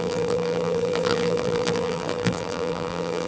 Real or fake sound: fake